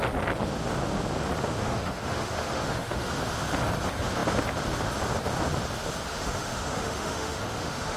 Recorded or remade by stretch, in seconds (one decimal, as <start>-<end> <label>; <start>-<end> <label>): 0.0-1.6 recorded; 1.6-3.1 remade; 3.1-6.1 recorded; 6.1-8.0 remade